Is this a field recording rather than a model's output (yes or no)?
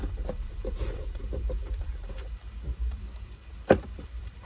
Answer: no